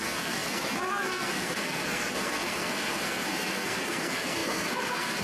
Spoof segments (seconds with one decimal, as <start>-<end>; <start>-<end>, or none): 0.0-5.2